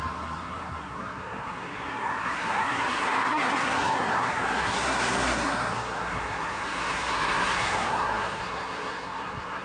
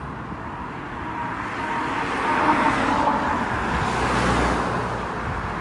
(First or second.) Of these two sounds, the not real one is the first